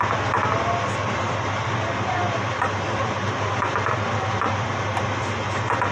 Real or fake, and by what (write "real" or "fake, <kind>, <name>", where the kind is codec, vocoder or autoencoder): real